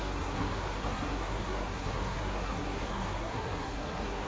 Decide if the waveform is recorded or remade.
remade